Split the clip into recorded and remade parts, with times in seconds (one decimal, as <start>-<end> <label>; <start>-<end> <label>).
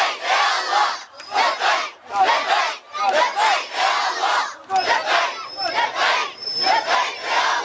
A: 0.0-0.8 recorded; 0.8-2.0 remade; 2.0-3.3 recorded; 3.3-4.7 remade; 4.7-6.2 recorded; 6.2-7.6 remade